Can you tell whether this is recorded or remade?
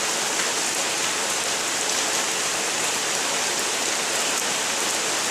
recorded